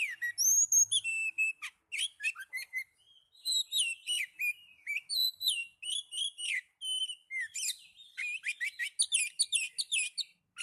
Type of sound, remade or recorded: recorded